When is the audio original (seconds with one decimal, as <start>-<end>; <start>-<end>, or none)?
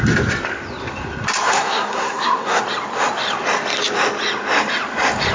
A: 0.0-1.5; 2.6-5.3